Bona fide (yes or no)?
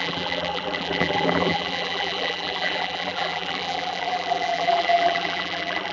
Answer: no